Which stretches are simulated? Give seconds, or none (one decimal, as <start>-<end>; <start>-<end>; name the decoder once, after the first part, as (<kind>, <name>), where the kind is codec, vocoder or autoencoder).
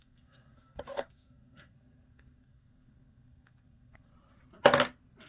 0.0-4.1 (codec, SNAC)